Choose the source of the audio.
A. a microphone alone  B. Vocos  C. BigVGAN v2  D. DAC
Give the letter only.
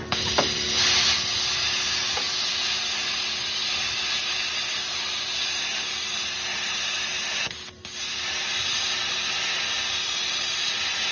A